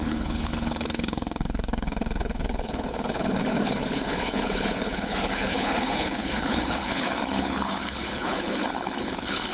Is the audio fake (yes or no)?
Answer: yes